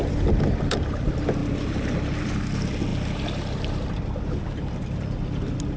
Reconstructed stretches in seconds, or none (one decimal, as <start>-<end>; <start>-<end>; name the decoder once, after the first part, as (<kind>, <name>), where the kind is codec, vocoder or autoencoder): none